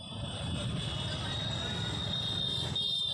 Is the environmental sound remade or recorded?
recorded